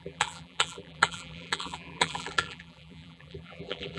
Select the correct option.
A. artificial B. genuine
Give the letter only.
A